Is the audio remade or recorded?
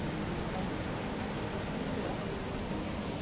recorded